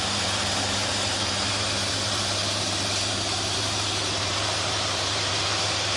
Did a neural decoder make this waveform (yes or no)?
yes